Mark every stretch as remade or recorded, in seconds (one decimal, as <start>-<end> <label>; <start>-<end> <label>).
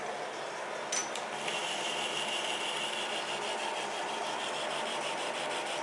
0.0-5.8 recorded